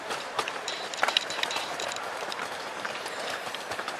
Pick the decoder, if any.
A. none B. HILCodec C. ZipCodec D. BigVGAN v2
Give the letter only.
D